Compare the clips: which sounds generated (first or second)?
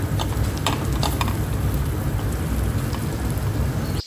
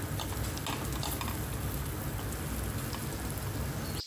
first